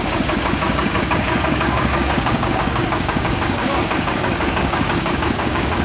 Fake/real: fake